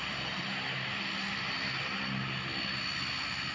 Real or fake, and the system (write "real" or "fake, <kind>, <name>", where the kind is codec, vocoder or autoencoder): real